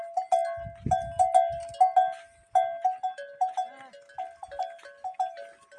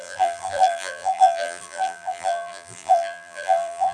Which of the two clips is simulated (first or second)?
second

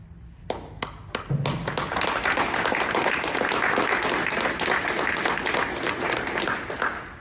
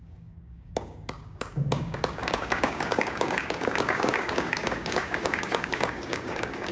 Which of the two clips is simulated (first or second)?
second